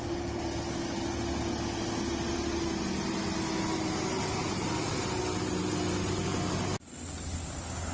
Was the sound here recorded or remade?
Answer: recorded